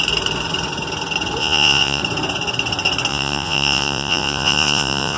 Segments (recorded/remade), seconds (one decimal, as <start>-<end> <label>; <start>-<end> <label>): 0.0-1.4 recorded; 1.4-2.0 remade; 2.0-3.1 recorded; 3.1-5.2 remade